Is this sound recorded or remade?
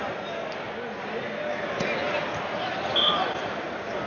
recorded